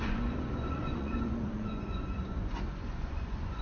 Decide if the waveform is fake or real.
fake